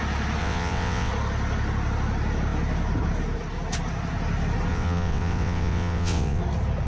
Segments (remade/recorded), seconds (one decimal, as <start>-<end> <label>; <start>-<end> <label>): 0.0-0.4 recorded; 0.4-1.1 remade; 1.1-4.7 recorded; 4.7-6.4 remade; 6.4-6.9 recorded